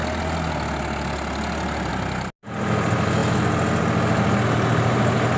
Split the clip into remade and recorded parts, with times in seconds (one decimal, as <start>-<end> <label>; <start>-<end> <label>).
0.0-5.4 recorded

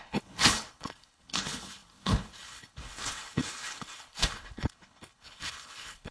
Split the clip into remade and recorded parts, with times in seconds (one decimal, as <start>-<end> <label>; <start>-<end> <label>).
0.0-6.1 remade

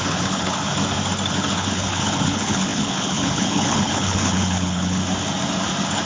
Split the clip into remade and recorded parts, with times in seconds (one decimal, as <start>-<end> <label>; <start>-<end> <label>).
0.0-0.7 remade; 0.7-1.3 recorded; 1.3-5.0 remade; 5.0-6.1 recorded